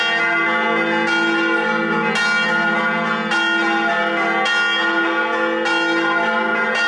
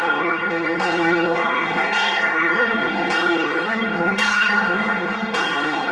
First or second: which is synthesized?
second